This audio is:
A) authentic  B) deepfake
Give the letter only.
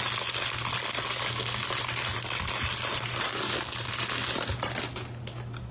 A